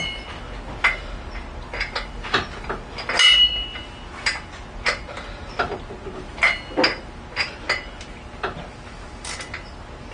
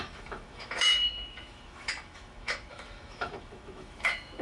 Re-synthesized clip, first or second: second